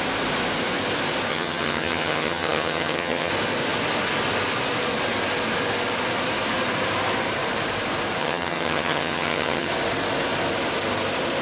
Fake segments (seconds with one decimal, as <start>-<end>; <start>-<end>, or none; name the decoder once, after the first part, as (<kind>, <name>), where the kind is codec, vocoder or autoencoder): 1.3-3.3 (vocoder, HiFi-GAN); 8.2-9.7